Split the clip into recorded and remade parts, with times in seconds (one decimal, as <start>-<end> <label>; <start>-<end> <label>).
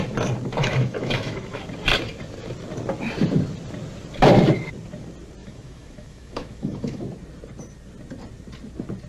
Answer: 0.0-0.6 recorded; 0.6-1.6 remade; 1.6-5.4 recorded; 5.4-7.0 remade; 7.0-9.1 recorded